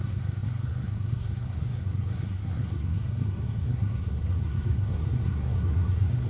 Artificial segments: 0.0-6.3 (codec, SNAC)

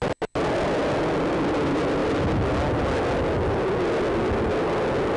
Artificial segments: none

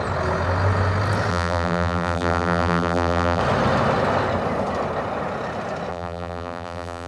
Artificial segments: 1.3-3.4 (vocoder, BigVGAN v2); 5.9-7.1

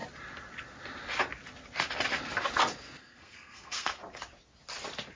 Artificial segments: 3.0-4.0 (codec, SNAC)

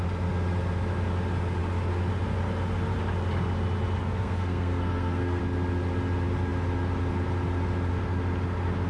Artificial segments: 4.0-5.4 (codec, SNAC)